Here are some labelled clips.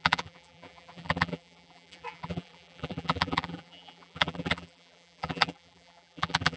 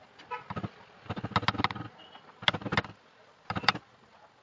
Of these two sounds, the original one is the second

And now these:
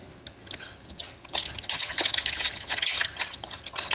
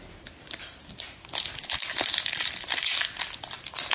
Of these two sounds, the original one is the second